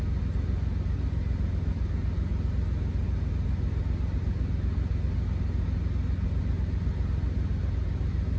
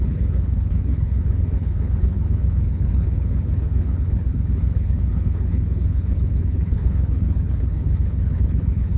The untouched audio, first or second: first